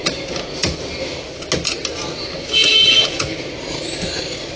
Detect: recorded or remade recorded